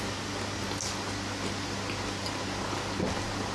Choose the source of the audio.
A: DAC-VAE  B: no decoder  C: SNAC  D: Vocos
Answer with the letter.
B